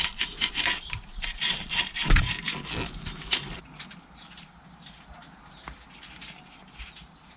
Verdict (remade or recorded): recorded